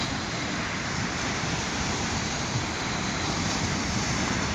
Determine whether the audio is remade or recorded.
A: remade